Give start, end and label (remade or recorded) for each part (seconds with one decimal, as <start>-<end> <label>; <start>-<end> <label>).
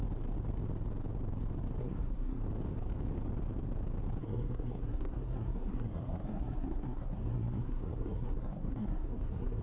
0.0-1.8 recorded; 1.8-2.4 remade; 2.4-4.2 recorded; 4.2-9.6 remade